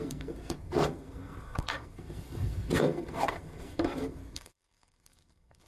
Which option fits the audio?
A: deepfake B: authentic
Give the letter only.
A